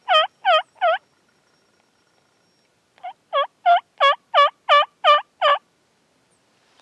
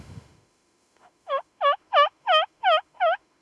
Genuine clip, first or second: first